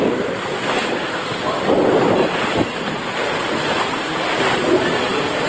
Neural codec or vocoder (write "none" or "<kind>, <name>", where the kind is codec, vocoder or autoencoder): none